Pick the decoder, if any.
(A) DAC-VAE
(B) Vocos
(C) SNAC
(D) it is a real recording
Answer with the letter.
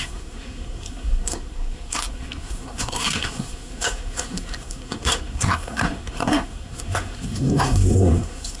C